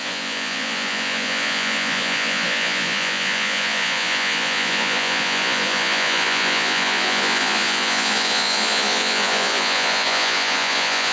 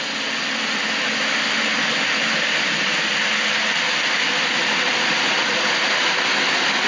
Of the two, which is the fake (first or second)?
first